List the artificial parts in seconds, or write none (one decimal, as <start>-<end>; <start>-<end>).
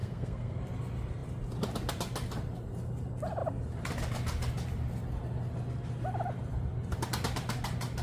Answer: 0.0-0.6